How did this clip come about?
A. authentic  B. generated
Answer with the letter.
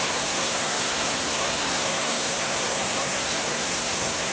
B